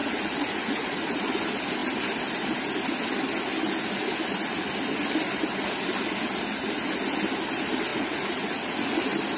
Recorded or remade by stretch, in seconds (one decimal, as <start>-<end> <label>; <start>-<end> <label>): 0.0-1.2 remade; 1.2-7.9 recorded; 7.9-9.0 remade; 9.0-9.4 recorded